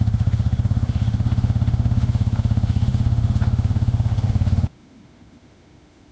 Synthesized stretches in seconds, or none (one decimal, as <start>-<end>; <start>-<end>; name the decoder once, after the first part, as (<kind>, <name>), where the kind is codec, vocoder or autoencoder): 0.0-6.1 (autoencoder, DAC-VAE)